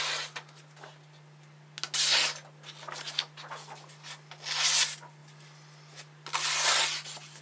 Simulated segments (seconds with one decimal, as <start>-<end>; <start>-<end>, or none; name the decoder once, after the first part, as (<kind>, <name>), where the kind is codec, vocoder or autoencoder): none